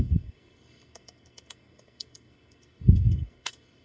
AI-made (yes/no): yes